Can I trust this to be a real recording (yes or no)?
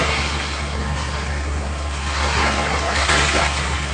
no